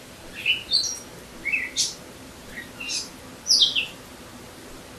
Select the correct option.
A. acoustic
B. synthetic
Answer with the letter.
A